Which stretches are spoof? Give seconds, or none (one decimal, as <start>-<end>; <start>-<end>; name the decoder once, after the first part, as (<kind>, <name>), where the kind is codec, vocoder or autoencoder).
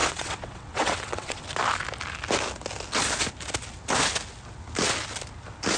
0.0-1.4 (vocoder, WaveNeXt)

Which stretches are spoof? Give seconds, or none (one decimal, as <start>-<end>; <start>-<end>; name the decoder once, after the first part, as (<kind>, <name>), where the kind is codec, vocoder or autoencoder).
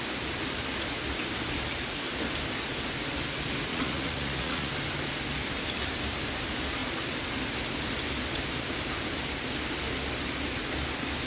3.7-4.7 (vocoder, Vocos)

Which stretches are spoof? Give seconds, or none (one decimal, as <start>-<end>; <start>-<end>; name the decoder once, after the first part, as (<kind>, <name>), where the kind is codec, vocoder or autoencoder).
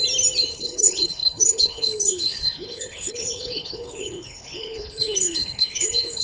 0.5-6.2 (codec, HILCodec)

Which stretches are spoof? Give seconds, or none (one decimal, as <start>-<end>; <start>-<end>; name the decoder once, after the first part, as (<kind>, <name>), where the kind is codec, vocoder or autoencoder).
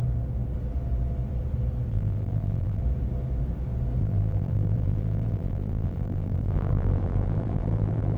1.9-2.8 (vocoder, BigVGAN v2); 4.0-8.2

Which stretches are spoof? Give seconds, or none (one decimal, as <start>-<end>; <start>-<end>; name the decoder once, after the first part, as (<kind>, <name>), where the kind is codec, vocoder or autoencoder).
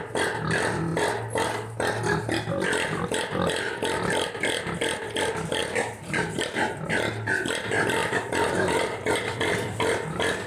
5.6-6.2 (vocoder, BigVGAN v2); 8.0-9.8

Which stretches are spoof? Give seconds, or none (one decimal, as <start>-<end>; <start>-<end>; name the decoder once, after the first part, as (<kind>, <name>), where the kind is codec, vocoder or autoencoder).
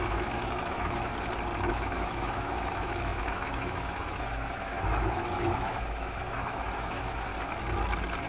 0.0-1.1 (autoencoder, DAC-VAE); 1.7-7.3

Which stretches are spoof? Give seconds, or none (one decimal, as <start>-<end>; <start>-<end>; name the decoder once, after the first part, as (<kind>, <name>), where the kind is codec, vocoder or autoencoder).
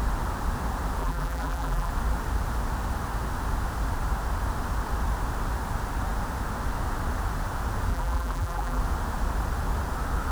1.0-1.9 (vocoder, BigVGAN v2); 7.9-8.8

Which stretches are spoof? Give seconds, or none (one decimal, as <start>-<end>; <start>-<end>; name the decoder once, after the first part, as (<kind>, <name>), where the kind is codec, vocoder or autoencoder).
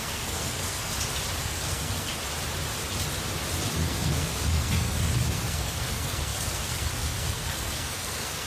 0.0-0.9 (codec, SNAC); 1.4-2.1; 3.7-8.5